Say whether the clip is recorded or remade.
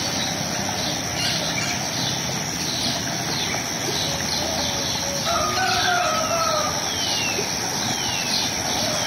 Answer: recorded